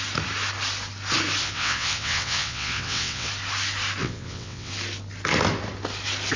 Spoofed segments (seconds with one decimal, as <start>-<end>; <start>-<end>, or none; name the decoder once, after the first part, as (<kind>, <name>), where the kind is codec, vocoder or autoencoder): 1.4-3.3 (vocoder, WaveNeXt); 4.0-4.7